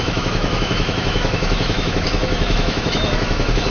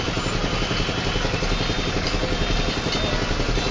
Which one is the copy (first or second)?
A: first